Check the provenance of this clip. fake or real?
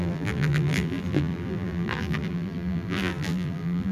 fake